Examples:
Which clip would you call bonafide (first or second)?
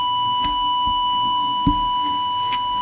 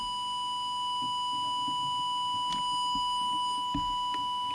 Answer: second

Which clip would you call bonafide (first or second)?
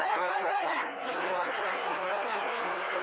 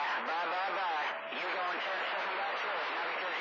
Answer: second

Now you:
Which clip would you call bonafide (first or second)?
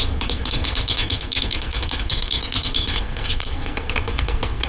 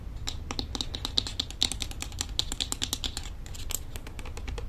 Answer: second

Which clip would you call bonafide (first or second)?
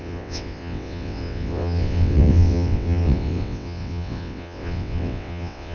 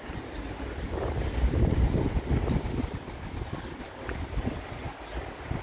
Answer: second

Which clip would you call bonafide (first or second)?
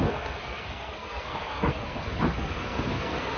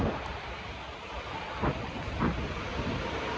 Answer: second